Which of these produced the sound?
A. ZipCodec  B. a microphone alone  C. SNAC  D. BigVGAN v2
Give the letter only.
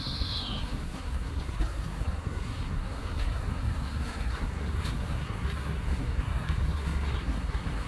C